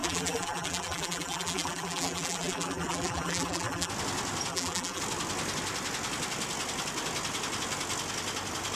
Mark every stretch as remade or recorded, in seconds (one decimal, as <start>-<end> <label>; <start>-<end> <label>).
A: 0.0-3.9 remade; 3.9-4.5 recorded; 4.5-5.0 remade; 5.0-8.8 recorded